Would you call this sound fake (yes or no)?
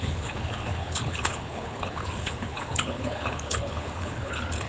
yes